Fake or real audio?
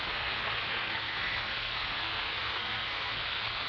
fake